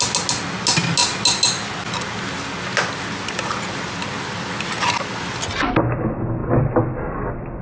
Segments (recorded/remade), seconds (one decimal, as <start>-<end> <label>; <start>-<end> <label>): 0.0-7.6 recorded